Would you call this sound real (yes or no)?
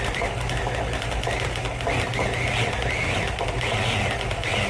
yes